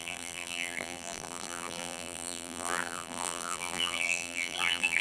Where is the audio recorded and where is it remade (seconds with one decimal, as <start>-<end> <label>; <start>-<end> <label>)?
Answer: 0.0-5.0 remade